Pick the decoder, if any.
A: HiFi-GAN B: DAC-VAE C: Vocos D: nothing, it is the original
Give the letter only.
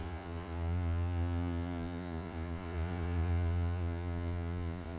C